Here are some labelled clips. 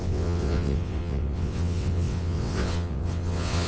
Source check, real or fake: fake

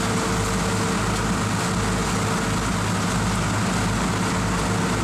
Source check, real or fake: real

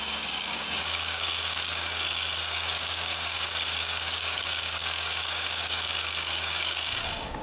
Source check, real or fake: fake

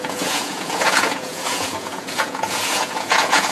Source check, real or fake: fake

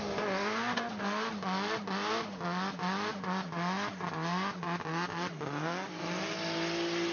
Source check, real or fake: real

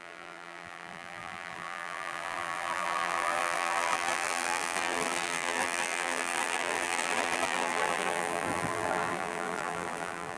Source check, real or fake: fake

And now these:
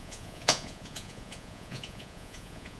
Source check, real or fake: fake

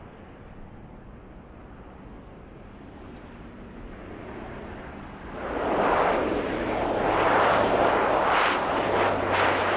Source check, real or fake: real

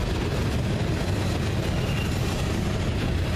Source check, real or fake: real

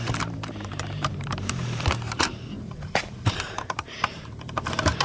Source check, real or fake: fake